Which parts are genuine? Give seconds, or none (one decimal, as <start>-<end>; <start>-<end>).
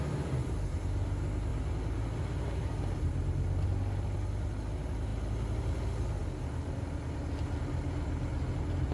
0.0-8.9